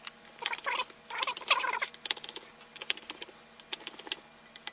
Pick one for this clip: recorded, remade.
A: recorded